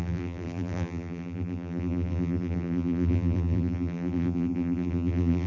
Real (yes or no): no